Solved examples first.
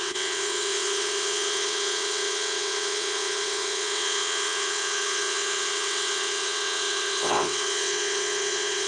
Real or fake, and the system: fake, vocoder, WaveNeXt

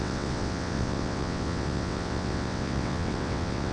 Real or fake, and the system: fake, vocoder, WaveNeXt